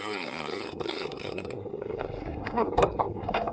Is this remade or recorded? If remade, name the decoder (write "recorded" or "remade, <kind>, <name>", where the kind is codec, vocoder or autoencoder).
remade, codec, SNAC